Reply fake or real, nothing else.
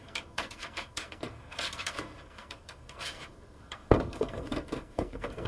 fake